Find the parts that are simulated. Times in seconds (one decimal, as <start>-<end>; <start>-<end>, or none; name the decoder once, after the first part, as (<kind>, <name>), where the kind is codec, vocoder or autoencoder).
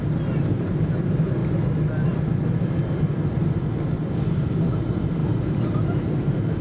0.0-1.4 (vocoder, BigVGAN v2); 4.5-6.6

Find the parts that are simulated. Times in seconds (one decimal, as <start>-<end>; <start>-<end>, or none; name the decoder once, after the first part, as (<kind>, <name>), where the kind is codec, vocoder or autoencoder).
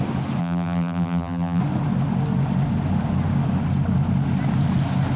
0.4-1.6 (vocoder, BigVGAN v2)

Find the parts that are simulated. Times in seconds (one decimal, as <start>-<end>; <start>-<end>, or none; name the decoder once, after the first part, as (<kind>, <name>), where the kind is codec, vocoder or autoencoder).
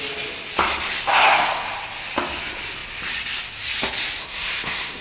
1.1-1.6 (codec, SNAC); 4.2-5.0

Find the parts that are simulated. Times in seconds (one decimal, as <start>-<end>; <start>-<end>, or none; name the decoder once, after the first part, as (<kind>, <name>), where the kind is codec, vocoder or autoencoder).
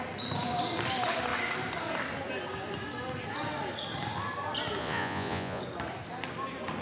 4.8-5.6 (vocoder, Vocos)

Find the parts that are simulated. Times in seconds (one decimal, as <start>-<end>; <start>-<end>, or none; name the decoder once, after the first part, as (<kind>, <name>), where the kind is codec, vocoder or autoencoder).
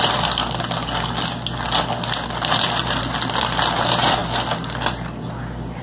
none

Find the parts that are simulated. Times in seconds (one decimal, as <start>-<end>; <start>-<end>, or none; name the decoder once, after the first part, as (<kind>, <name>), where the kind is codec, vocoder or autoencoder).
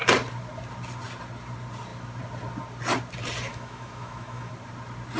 3.5-4.5 (autoencoder, DAC-VAE)